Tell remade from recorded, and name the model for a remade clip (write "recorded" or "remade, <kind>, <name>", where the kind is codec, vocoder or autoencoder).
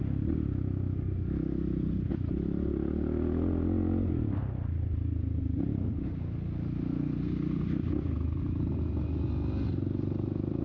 recorded